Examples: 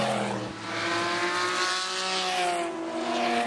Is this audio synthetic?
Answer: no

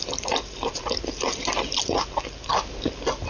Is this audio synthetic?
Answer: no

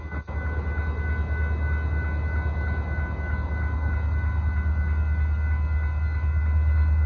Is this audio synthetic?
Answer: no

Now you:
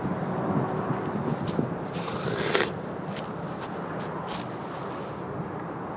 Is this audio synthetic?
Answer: no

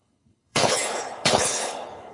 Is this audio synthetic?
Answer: yes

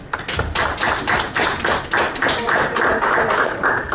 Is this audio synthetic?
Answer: no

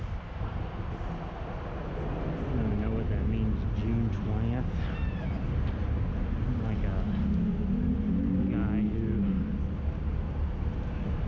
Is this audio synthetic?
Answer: no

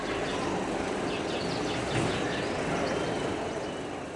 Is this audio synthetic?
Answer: no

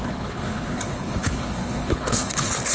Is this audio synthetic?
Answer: yes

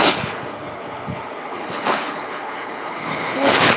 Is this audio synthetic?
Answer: yes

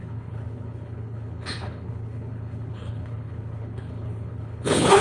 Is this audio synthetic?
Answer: yes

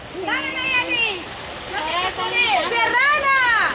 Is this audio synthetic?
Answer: no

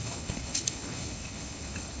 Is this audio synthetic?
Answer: yes